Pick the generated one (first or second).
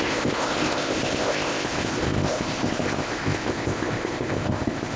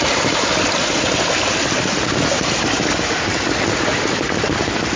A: first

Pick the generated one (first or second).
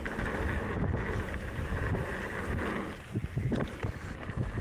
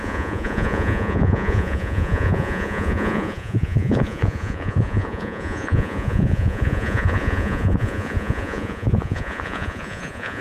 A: second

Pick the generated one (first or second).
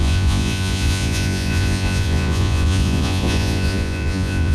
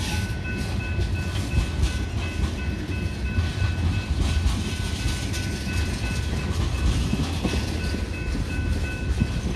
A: first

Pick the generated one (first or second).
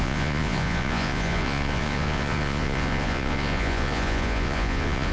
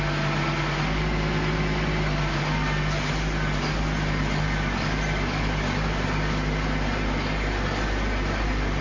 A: first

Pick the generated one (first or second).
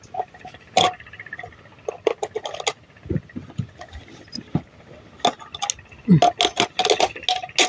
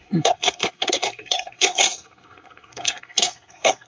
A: second